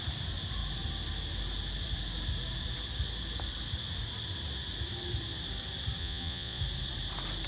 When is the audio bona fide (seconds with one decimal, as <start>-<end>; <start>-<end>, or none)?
0.0-6.0; 6.6-7.5